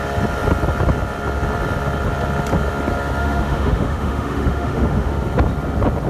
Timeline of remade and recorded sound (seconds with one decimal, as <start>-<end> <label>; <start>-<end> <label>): 0.0-3.2 recorded; 3.2-5.1 remade; 5.1-6.1 recorded